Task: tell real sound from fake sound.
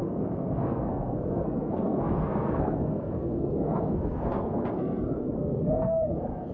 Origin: fake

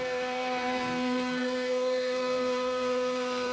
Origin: fake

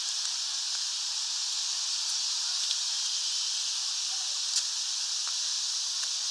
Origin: real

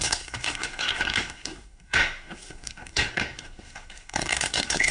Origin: fake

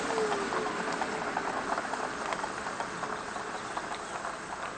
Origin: real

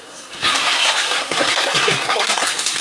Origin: fake